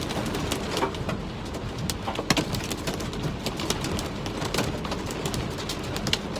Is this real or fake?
real